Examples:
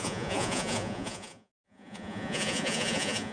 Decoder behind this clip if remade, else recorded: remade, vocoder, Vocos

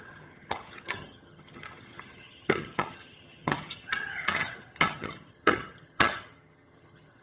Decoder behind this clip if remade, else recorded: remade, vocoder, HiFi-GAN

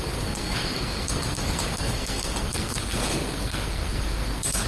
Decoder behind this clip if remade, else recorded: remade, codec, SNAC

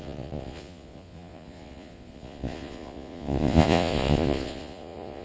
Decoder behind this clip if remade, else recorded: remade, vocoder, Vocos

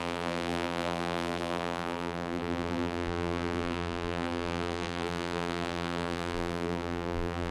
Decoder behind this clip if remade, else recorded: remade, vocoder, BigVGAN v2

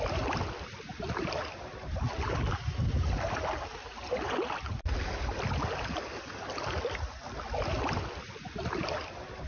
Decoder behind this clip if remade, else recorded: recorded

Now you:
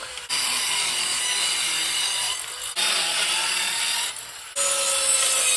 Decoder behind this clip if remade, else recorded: recorded